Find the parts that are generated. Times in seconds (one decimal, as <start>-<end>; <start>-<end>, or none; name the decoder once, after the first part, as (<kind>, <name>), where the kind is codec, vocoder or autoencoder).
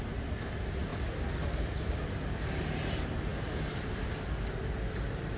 none